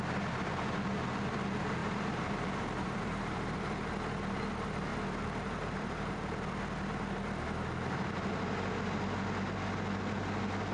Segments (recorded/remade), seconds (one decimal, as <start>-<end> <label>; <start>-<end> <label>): 0.0-1.8 recorded; 1.8-3.7 remade; 3.7-4.9 recorded; 4.9-6.5 remade; 6.5-10.7 recorded